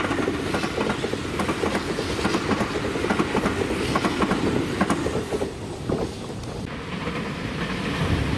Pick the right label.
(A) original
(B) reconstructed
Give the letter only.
A